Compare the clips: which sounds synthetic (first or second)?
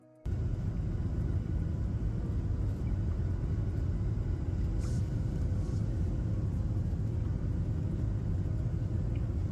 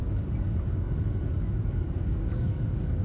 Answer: second